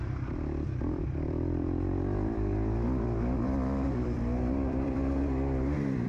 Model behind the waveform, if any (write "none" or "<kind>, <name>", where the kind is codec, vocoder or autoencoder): vocoder, BigVGAN v2